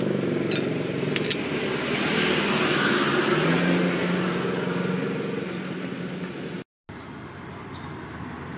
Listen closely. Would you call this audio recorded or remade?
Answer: recorded